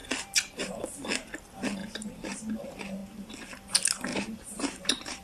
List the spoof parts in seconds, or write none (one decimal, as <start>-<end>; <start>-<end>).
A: 0.0-0.7; 1.8-2.4; 4.1-5.2